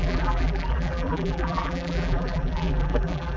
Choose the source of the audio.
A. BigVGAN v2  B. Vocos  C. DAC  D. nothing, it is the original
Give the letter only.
A